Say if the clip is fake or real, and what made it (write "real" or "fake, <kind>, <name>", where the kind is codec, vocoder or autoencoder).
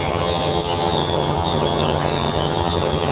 fake, vocoder, HiFi-GAN